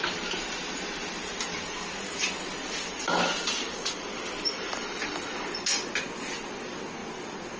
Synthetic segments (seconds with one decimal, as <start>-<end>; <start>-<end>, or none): none